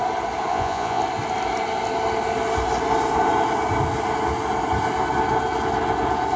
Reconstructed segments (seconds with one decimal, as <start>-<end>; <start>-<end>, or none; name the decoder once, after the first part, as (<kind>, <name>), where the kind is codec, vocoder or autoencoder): 0.5-1.0 (vocoder, Vocos)

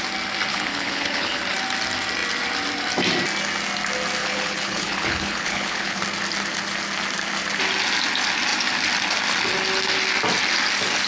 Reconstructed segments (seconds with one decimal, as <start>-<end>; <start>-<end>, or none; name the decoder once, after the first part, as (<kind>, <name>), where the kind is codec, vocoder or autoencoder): 0.5-1.4 (codec, HILCodec); 4.2-6.0